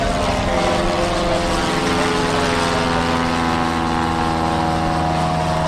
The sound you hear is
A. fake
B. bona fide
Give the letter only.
B